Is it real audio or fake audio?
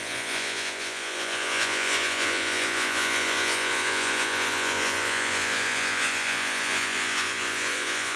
fake